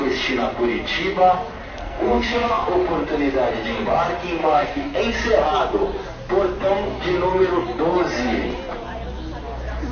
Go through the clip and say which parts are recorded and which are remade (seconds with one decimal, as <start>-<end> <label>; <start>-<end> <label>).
0.0-1.8 recorded; 1.8-2.7 remade; 2.7-4.4 recorded; 4.4-5.0 remade; 5.0-9.9 recorded